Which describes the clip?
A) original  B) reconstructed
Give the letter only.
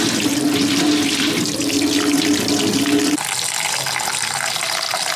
A